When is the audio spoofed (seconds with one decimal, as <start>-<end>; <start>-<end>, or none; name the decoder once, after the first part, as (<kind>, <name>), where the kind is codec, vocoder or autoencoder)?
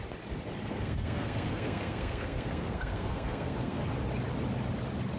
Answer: 0.7-3.8 (codec, SNAC)